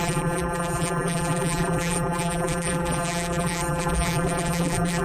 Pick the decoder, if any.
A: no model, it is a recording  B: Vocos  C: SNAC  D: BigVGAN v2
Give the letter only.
D